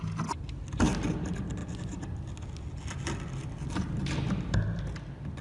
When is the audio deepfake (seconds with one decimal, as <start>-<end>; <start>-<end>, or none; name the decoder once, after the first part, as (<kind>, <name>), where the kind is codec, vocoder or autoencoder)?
none